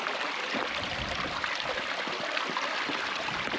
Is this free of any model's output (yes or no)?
yes